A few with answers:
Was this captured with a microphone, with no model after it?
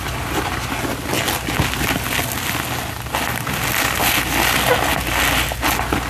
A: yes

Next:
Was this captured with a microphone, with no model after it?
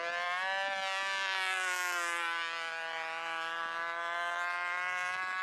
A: yes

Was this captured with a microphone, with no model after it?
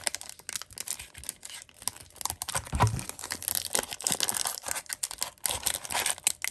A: yes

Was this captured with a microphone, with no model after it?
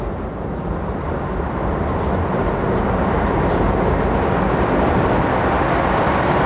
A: yes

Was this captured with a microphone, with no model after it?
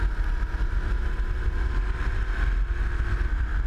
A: yes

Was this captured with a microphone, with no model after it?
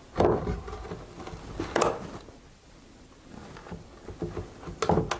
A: yes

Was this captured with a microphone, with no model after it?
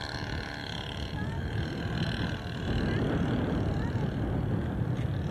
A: yes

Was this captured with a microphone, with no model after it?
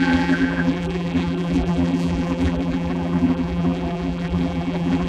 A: no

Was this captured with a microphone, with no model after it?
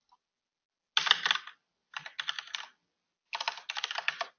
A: yes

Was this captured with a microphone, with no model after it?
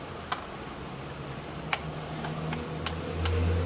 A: yes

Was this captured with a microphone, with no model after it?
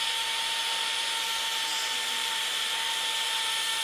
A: yes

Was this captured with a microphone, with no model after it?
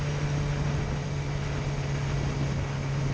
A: yes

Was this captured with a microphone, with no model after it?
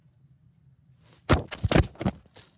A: yes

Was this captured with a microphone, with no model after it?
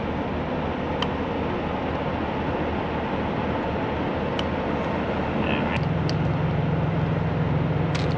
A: yes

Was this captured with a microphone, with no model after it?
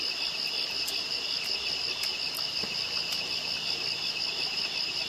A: yes